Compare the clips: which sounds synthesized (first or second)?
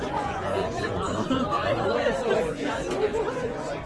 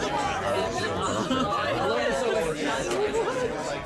first